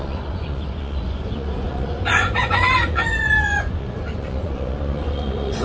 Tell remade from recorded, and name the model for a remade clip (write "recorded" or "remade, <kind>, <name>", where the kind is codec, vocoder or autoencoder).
remade, vocoder, Vocos